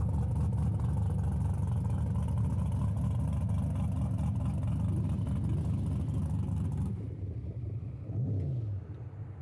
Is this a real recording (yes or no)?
yes